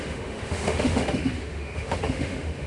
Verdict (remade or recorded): remade